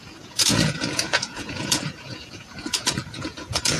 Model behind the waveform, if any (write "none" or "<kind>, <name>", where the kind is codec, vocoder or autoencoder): vocoder, Vocos